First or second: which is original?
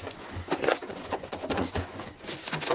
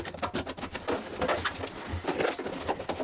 second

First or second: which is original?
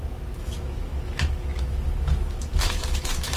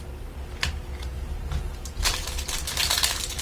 second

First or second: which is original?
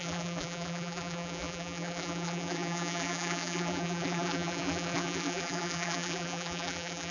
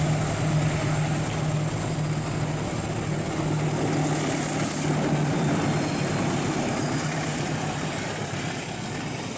second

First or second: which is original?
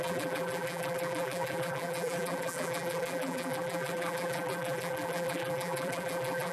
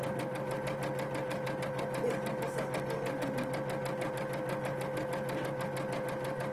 second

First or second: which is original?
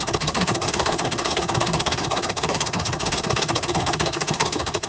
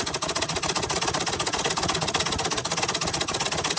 second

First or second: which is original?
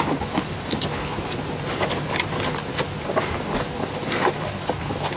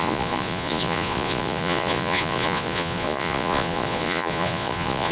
first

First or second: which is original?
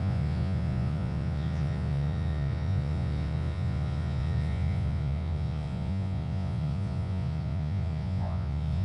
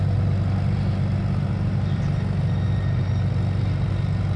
second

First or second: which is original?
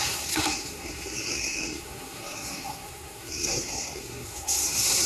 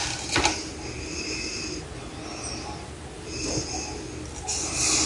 second